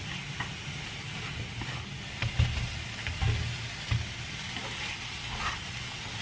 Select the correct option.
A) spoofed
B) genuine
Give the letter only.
B